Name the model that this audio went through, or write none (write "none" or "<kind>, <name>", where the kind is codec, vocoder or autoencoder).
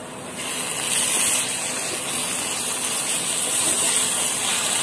none